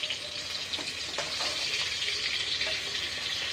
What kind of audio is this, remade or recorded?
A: recorded